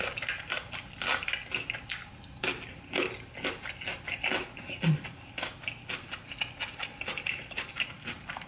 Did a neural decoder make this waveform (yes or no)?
no